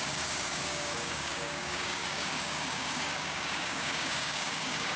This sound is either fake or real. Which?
fake